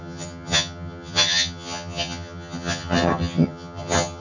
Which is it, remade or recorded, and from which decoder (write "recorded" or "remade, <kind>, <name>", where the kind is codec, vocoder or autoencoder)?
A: remade, vocoder, HiFi-GAN